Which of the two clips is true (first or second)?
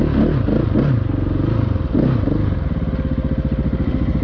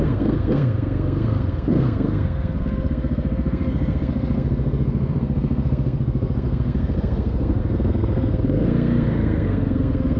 first